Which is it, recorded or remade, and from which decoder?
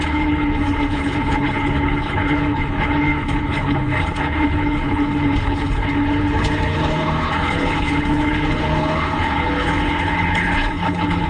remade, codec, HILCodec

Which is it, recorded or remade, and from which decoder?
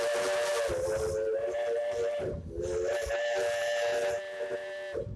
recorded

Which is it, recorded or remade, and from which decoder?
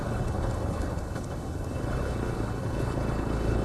remade, codec, HILCodec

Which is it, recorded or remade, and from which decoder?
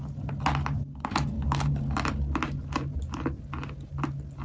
recorded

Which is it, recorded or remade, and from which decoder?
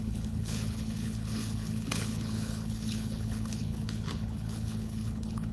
remade, codec, HILCodec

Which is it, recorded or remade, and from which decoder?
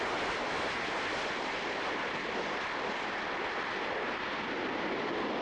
recorded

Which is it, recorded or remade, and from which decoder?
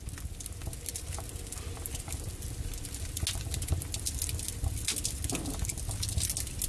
recorded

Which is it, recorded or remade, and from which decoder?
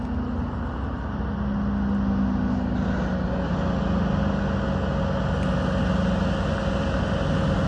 recorded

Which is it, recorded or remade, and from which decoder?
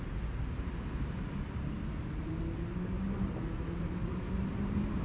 recorded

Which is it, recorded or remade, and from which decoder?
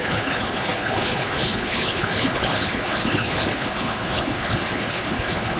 remade, codec, HILCodec